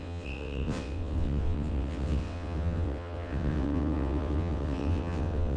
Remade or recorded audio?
remade